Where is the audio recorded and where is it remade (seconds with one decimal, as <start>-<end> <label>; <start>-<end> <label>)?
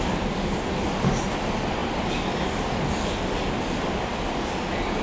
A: 0.0-5.0 recorded